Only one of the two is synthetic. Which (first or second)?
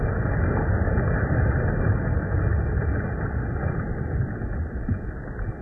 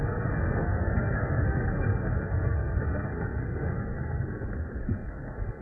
second